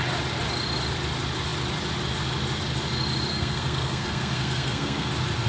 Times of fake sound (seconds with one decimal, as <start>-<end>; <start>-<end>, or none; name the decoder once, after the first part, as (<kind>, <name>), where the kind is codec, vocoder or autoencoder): 3.3-5.1 (codec, SNAC)